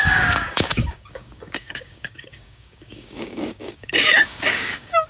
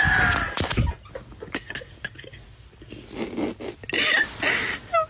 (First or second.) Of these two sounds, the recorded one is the second